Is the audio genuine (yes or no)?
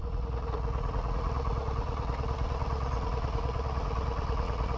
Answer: no